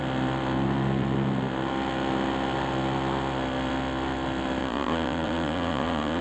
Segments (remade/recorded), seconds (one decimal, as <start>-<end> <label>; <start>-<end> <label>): 0.0-4.6 recorded; 4.6-6.2 remade